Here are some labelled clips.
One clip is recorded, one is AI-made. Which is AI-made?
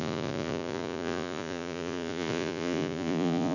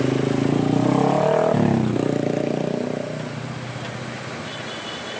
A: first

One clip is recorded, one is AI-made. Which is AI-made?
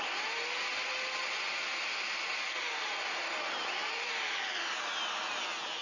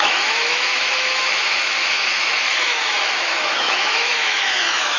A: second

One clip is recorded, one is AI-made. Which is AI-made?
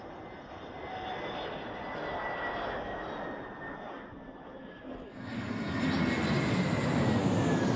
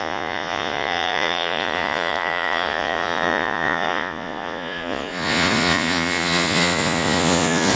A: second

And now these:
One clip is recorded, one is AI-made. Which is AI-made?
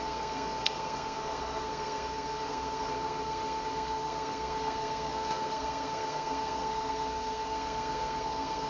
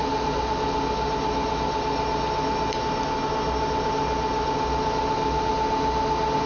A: first